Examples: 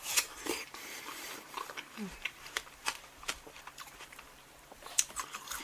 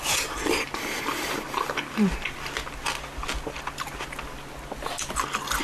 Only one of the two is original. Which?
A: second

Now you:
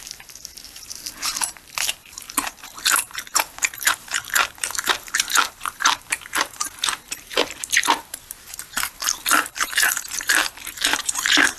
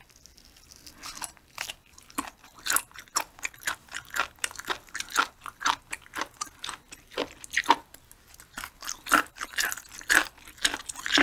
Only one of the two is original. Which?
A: second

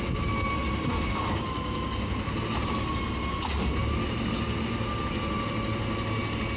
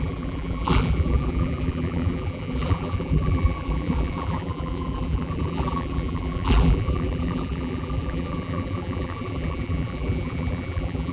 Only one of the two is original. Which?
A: first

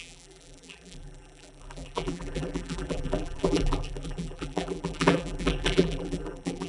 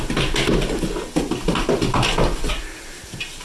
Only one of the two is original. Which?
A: second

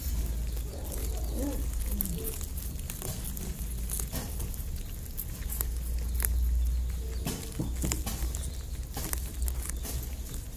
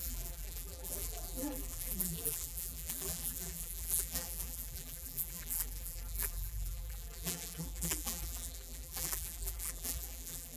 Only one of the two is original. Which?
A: first